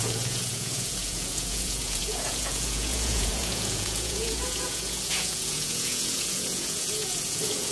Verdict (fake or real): fake